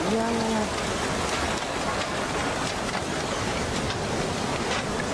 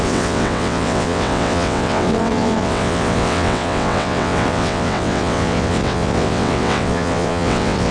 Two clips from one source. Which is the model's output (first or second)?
second